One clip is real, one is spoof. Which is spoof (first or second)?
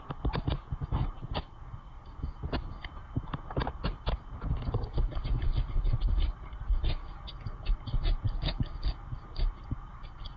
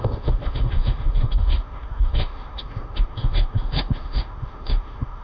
second